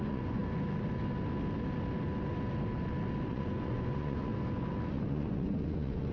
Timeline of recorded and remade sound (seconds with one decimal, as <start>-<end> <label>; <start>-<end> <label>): 0.0-0.4 remade; 0.4-3.3 recorded; 3.3-4.3 remade; 4.3-4.9 recorded; 4.9-6.1 remade